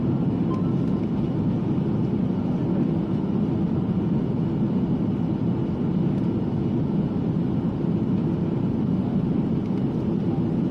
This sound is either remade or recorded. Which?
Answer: recorded